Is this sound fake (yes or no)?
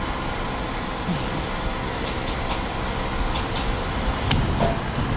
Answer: no